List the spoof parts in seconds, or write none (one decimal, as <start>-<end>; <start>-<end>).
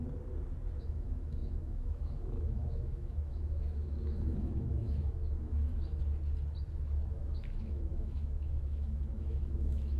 0.8-6.0; 7.1-10.0